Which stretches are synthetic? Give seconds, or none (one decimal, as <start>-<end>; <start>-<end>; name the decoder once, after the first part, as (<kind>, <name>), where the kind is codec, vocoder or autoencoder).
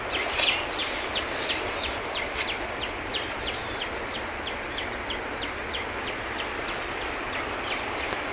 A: none